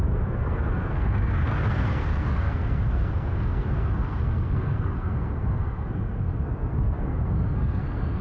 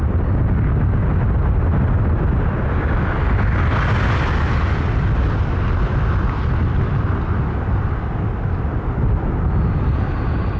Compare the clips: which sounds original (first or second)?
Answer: second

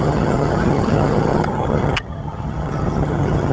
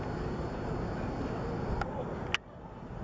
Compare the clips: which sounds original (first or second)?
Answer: second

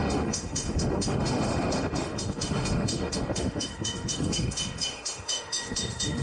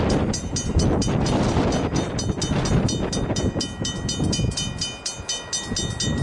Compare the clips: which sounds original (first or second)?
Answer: second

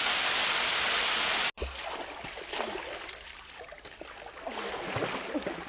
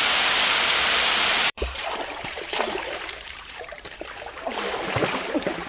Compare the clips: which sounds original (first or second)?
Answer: first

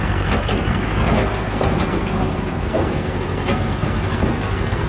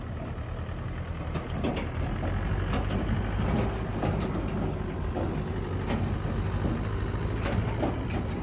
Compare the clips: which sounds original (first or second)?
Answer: second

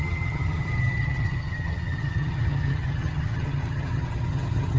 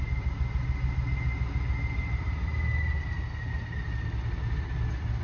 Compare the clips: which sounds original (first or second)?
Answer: second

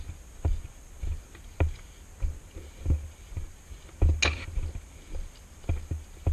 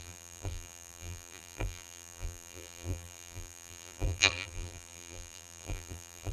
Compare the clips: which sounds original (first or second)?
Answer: first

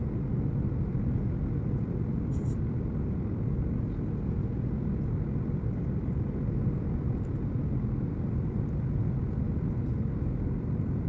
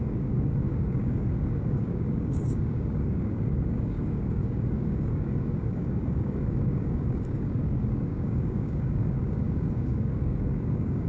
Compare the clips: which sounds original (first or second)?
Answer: first